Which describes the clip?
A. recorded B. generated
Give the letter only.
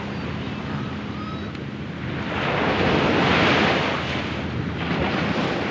A